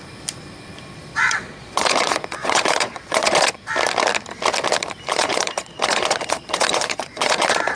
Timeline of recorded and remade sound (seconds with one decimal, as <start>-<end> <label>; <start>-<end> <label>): 0.0-1.1 recorded; 1.1-3.7 remade; 3.7-5.1 recorded; 5.1-7.8 remade